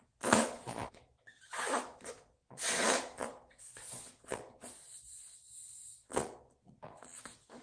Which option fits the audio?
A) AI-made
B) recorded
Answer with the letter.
A